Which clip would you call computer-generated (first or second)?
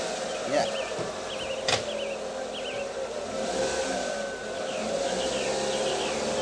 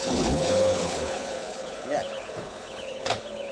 second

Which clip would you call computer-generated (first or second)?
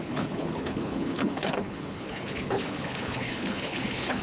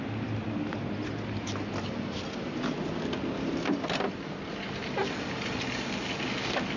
first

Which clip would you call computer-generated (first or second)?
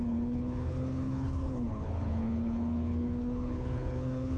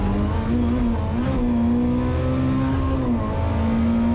first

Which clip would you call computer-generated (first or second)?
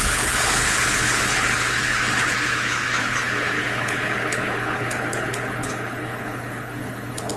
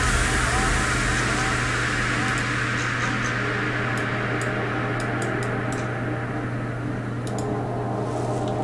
first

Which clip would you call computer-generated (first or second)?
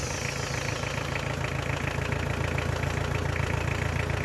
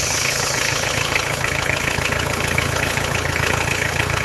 second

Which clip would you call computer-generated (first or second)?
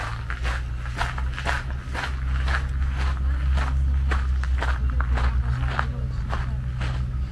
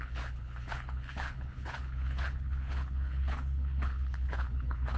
second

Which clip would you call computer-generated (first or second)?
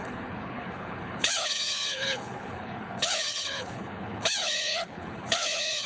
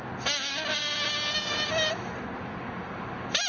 first